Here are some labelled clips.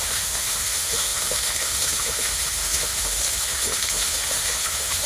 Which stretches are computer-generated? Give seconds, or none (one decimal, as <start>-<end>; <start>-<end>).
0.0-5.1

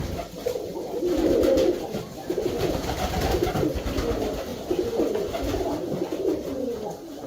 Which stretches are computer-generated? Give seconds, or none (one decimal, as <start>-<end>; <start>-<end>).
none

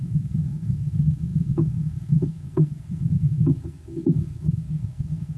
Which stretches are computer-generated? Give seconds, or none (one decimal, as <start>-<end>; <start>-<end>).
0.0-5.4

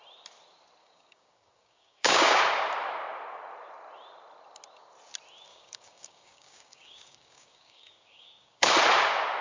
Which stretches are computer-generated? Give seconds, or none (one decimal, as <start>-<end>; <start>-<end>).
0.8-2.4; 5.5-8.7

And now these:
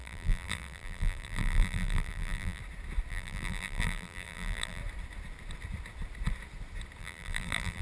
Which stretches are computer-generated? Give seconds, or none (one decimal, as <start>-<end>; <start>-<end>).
0.0-2.6; 3.1-4.8; 7.0-7.8

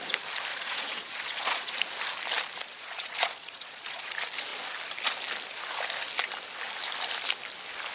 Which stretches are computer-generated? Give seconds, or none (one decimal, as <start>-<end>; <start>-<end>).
0.5-1.7; 2.7-4.1

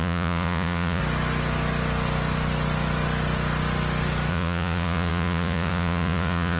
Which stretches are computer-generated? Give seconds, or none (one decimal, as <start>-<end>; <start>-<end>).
0.0-1.0; 4.3-6.6

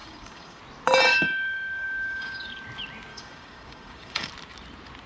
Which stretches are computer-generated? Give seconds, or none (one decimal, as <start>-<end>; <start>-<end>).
0.0-0.6; 1.1-2.5; 3.1-4.3